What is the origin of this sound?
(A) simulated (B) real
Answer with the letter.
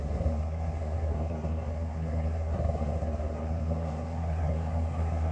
A